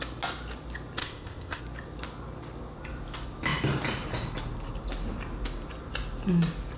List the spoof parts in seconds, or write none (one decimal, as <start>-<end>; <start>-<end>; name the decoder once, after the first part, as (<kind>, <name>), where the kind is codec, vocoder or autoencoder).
1.0-1.6 (codec, ZipCodec)